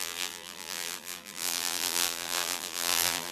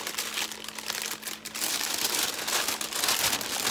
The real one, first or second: second